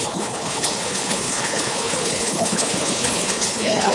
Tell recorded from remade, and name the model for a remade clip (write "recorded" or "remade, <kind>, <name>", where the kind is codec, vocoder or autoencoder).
remade, codec, HILCodec